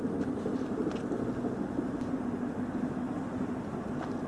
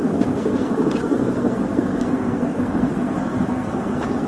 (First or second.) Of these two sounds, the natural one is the first